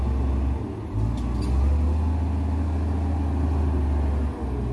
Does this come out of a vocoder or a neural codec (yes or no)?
no